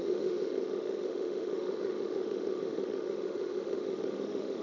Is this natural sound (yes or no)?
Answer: no